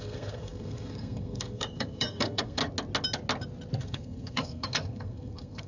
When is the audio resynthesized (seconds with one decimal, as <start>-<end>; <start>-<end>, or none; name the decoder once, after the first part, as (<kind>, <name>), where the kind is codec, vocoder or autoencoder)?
0.0-2.6 (codec, SNAC); 3.8-5.7